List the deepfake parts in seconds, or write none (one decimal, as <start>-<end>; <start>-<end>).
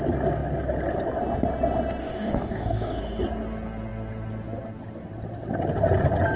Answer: 2.0-3.0